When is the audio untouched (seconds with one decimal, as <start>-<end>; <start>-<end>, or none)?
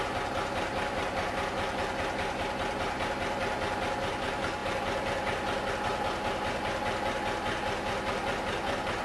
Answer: 0.0-9.0